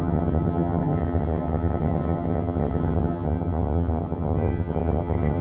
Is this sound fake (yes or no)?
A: yes